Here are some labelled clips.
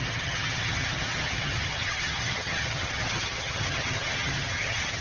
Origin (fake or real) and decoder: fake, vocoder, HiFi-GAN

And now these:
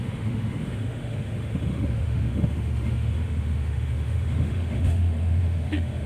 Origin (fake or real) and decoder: fake, autoencoder, DAC-VAE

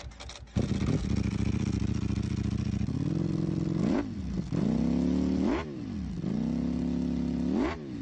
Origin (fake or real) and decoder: real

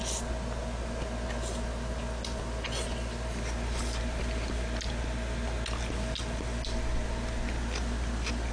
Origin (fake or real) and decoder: real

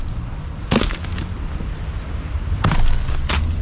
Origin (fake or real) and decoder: real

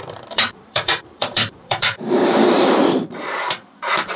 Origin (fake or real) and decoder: fake, vocoder, BigVGAN v2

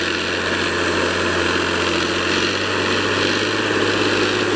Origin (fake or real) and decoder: real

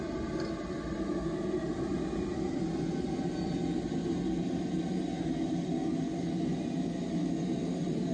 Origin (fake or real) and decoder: real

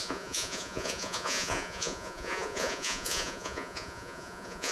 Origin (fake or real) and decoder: fake, vocoder, Vocos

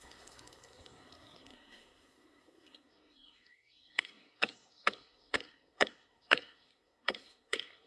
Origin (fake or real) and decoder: fake, codec, SNAC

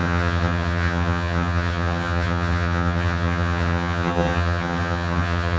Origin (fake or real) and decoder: fake, vocoder, HiFi-GAN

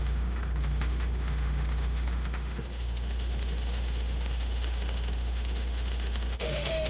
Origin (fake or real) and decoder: fake, autoencoder, DAC-VAE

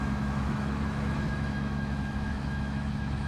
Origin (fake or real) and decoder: fake, autoencoder, DAC-VAE